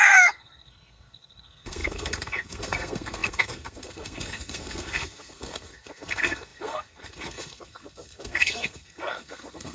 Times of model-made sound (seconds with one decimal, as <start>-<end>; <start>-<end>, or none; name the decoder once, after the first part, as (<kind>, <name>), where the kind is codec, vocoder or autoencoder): 0.0-9.7 (codec, SNAC)